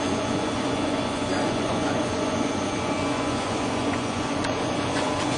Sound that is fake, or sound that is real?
fake